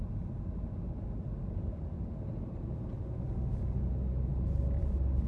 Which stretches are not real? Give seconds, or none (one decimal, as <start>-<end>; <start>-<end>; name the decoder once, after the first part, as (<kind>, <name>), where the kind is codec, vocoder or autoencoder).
none